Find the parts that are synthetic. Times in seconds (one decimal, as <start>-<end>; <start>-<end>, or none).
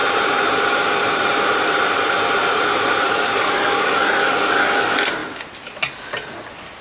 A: 0.0-3.6